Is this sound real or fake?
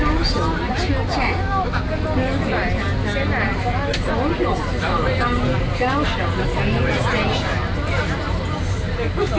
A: real